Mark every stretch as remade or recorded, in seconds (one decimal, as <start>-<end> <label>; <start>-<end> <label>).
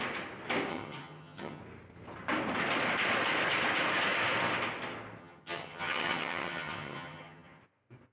0.0-0.7 recorded; 0.7-1.6 remade; 1.6-5.2 recorded; 5.2-7.6 remade; 7.6-8.1 recorded